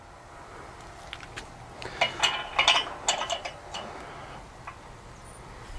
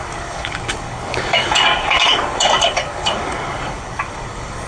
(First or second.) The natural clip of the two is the first